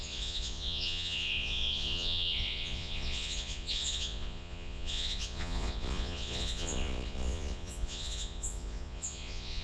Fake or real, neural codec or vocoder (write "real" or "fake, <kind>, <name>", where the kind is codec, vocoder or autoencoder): fake, vocoder, Vocos